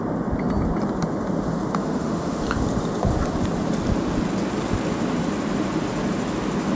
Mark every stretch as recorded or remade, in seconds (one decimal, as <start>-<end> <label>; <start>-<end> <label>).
0.0-1.8 recorded; 1.8-2.4 remade; 2.4-6.7 recorded